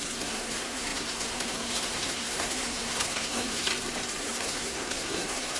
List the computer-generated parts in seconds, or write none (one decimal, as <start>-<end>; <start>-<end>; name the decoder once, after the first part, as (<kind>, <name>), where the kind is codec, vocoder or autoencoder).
0.0-3.7 (codec, SNAC); 4.2-5.6